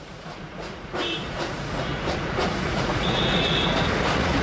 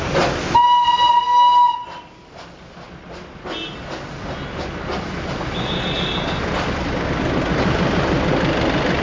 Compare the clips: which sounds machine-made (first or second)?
first